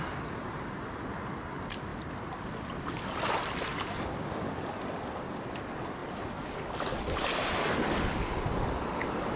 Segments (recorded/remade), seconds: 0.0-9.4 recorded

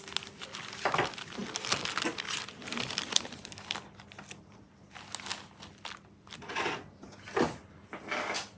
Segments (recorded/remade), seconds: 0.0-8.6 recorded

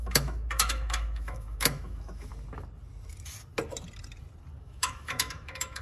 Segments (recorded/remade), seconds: 0.0-2.3 remade; 2.3-4.6 recorded; 4.6-5.8 remade

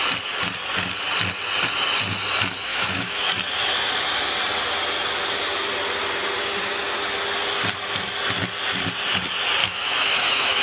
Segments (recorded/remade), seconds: 0.0-2.7 recorded; 2.7-3.3 remade; 3.3-9.6 recorded; 9.6-10.6 remade